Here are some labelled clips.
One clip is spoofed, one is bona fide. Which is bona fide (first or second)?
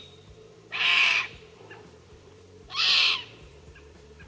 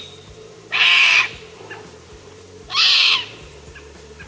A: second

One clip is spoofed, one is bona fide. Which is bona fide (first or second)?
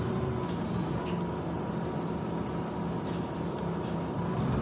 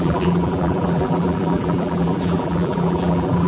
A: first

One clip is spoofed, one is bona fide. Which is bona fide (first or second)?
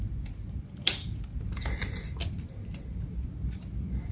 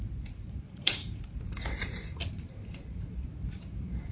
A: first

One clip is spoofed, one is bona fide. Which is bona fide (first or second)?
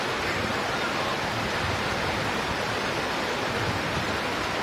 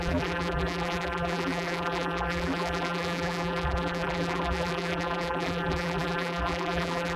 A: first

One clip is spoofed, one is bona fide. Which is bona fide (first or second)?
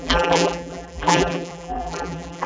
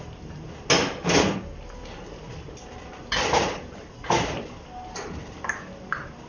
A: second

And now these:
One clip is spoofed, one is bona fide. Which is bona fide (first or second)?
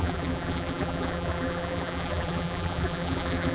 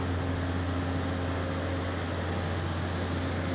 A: second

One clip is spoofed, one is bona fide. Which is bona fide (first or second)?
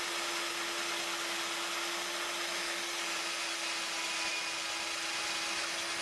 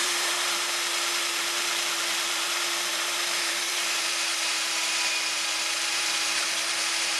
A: first